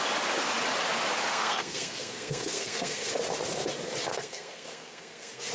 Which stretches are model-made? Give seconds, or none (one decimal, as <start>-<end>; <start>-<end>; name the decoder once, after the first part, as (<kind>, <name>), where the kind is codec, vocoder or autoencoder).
1.3-3.1 (codec, SNAC); 4.1-5.5